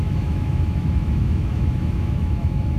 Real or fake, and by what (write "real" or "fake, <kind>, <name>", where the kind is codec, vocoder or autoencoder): fake, autoencoder, DAC-VAE